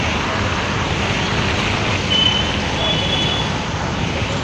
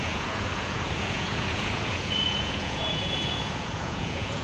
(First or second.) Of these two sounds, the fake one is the second